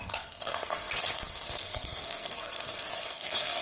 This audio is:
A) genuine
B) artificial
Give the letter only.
B